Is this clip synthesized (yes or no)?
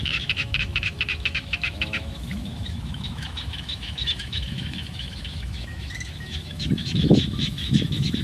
yes